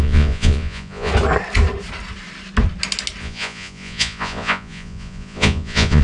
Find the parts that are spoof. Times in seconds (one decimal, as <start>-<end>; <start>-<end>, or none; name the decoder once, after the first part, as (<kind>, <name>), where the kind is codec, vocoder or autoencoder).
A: 0.0-1.1 (vocoder, Vocos); 3.2-6.0